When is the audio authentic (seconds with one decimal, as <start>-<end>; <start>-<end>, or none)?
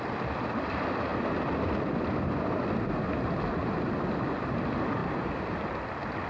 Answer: 0.0-6.3